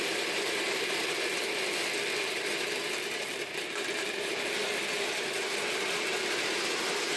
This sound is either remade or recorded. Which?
recorded